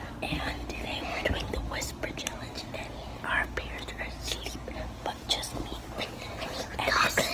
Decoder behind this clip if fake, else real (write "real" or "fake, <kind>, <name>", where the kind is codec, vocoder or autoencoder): real